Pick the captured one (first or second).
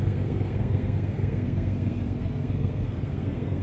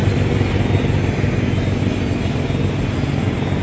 second